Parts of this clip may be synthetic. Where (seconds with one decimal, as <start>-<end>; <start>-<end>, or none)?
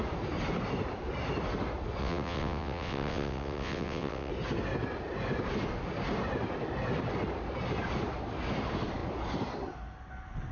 2.0-4.3